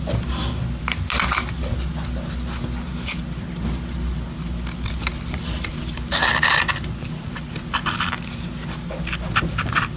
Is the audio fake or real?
real